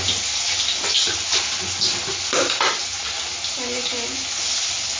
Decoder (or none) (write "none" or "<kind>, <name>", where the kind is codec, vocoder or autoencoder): none